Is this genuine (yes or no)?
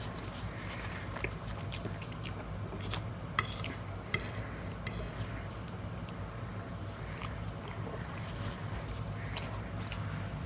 yes